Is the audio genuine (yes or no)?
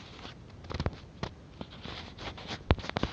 yes